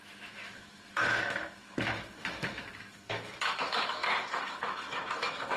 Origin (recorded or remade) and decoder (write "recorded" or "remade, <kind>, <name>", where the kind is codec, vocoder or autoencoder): remade, autoencoder, DAC-VAE